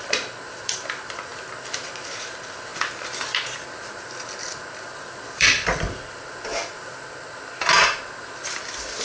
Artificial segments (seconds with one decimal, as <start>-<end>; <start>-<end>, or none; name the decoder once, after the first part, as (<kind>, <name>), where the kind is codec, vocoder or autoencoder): 0.0-1.3 (vocoder, BigVGAN v2); 2.2-2.7; 4.4-6.5; 7.3-9.0